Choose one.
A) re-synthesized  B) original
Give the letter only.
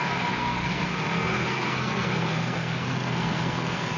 A